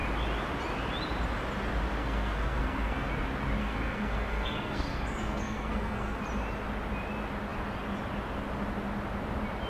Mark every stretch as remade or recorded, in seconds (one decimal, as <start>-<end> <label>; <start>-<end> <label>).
0.0-2.0 recorded; 2.0-3.1 remade; 3.1-3.6 recorded; 3.6-6.2 remade; 6.2-9.7 recorded